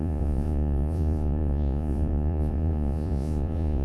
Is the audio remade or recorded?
remade